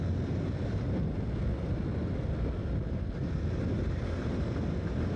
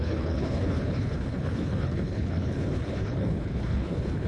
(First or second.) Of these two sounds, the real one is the first